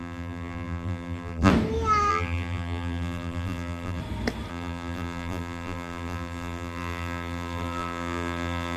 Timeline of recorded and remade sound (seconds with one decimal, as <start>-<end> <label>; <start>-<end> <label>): 0.0-1.5 remade; 1.5-2.1 recorded; 2.1-4.0 remade; 4.0-4.5 recorded; 4.5-8.8 remade